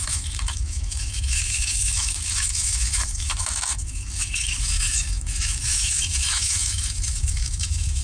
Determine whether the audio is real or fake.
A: fake